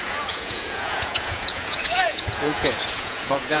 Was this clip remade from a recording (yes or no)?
yes